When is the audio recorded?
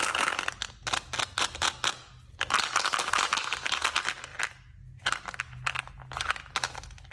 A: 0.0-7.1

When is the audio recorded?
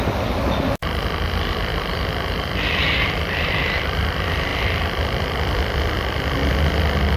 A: 0.0-7.2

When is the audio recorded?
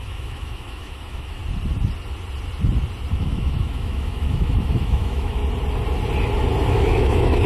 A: 1.4-3.1; 5.4-6.7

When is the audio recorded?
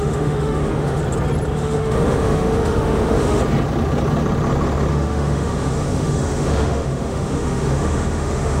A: 1.0-1.5; 3.4-4.9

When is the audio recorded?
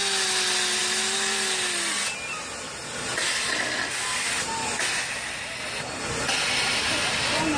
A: 0.0-7.6